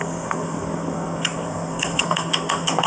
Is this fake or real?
fake